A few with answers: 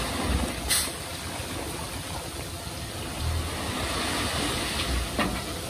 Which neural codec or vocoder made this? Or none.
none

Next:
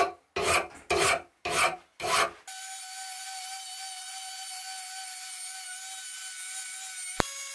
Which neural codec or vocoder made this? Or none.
none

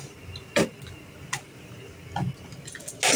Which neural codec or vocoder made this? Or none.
none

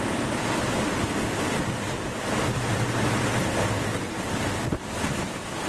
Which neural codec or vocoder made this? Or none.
none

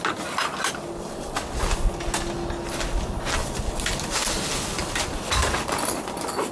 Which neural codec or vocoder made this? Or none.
none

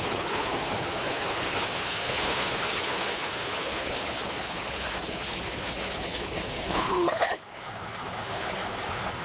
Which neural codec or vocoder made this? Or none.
codec, HILCodec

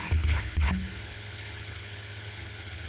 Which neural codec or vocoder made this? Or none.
codec, HILCodec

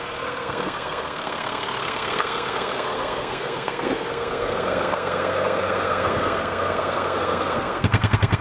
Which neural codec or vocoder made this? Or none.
codec, SNAC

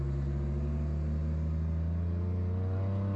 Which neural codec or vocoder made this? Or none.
none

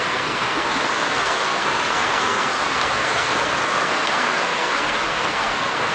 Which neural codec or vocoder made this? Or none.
codec, SNAC